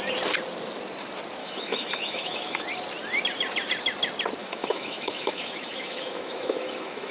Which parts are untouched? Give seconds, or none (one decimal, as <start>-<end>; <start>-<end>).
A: 0.0-1.4; 2.6-4.4